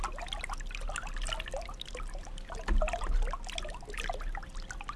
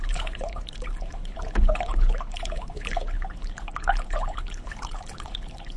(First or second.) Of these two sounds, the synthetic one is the second